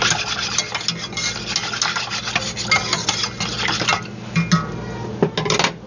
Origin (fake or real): real